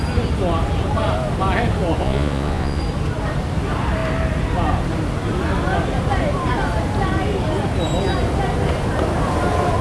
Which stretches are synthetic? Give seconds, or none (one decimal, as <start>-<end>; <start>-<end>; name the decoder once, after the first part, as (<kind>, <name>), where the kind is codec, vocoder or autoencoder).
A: 2.0-2.8 (vocoder, Vocos)